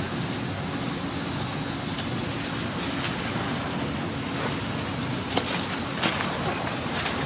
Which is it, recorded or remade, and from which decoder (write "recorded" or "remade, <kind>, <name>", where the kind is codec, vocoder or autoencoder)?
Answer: recorded